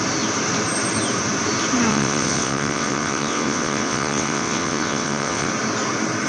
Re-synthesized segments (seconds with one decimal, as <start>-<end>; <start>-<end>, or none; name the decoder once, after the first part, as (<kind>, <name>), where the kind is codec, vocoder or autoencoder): 1.9-5.5 (vocoder, WaveNeXt)